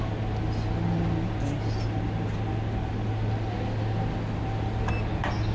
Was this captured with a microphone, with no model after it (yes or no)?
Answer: yes